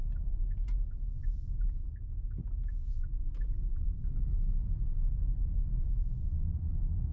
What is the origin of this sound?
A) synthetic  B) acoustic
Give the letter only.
B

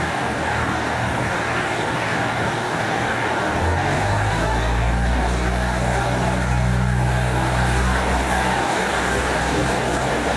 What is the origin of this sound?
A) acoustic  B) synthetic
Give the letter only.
B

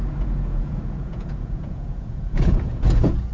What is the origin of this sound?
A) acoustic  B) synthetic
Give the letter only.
B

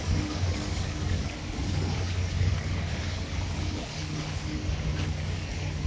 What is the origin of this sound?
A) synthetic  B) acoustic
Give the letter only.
A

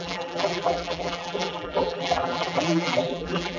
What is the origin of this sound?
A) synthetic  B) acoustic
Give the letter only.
A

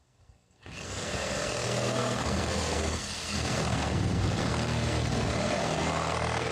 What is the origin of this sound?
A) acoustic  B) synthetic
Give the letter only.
B